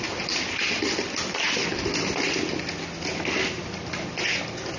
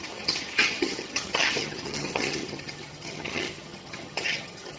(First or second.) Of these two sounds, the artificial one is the second